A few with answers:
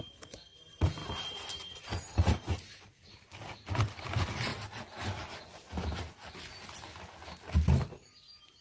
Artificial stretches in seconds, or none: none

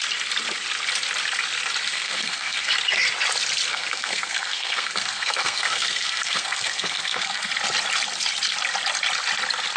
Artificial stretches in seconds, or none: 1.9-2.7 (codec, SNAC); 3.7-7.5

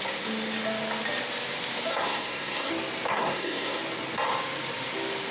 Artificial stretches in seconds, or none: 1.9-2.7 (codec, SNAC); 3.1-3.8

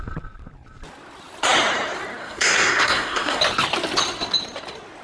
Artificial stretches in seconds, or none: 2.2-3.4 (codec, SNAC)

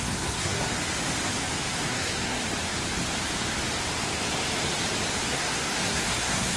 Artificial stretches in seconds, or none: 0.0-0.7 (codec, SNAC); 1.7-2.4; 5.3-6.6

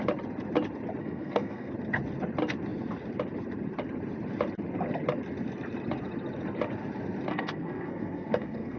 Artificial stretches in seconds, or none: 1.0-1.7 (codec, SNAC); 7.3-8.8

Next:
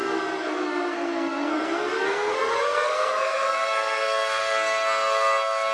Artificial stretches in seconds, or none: 0.0-5.7 (codec, SNAC)

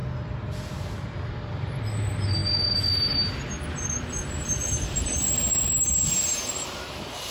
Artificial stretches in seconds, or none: none